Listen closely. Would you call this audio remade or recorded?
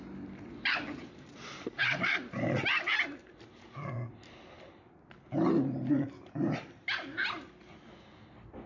recorded